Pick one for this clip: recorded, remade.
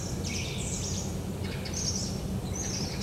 recorded